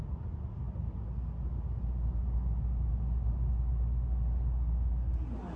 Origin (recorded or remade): recorded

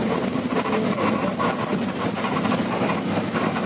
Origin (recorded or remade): recorded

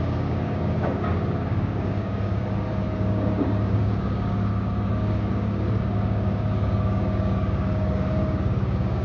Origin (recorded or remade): remade